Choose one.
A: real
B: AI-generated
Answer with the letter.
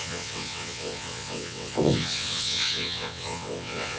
B